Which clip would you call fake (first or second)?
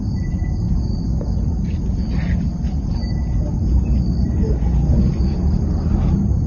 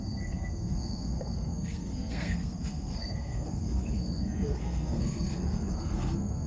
second